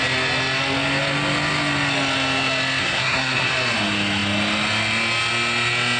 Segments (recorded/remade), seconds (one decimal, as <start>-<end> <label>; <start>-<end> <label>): 0.0-2.8 recorded; 2.8-3.5 remade; 3.5-6.0 recorded